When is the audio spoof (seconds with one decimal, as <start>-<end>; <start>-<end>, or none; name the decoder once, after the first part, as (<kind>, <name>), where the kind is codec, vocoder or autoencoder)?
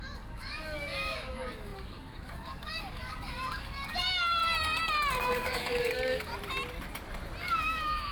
0.0-4.4 (codec, DAC); 5.1-6.3; 7.4-8.1